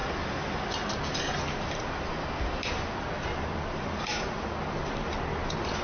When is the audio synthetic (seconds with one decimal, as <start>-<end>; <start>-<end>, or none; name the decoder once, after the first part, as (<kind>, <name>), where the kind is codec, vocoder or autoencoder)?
none